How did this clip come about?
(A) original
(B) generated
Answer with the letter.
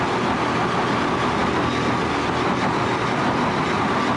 A